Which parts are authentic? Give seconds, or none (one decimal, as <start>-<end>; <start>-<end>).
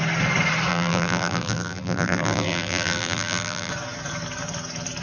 0.0-0.7; 3.7-5.0